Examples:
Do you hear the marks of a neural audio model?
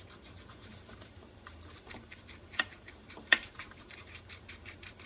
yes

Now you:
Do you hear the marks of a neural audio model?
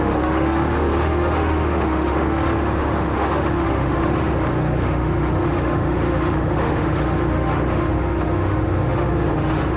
yes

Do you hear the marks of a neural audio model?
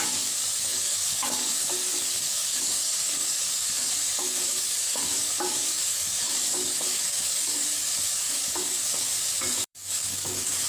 yes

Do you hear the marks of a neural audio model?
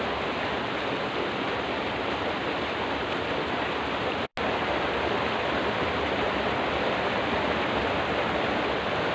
no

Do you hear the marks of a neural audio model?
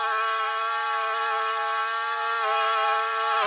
no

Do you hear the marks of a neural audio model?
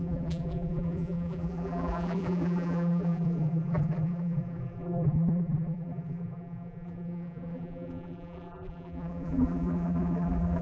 yes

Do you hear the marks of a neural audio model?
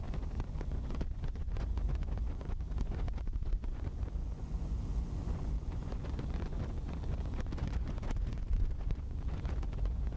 yes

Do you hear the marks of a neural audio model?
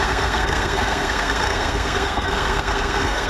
yes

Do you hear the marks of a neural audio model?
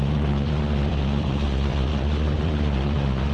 yes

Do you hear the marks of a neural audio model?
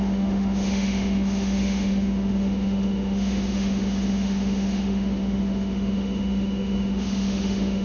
yes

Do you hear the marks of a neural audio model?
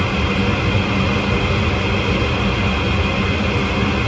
no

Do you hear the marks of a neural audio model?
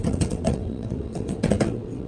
yes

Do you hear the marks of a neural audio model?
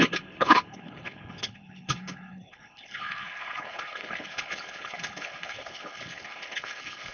yes